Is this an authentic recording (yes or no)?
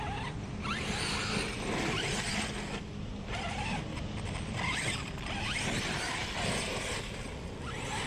yes